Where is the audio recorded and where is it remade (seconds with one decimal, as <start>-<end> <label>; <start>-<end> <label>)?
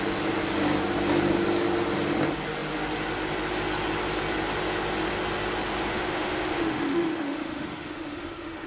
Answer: 0.0-5.9 recorded; 5.9-8.7 remade